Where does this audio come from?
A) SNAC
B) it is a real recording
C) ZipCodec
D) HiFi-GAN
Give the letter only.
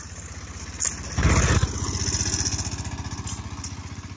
B